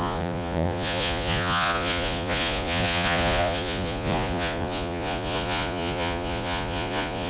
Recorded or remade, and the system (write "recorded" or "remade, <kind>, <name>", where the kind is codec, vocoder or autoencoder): remade, vocoder, Vocos